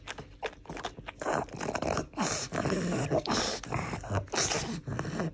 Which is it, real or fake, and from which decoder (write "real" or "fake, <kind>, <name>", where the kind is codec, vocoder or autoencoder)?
real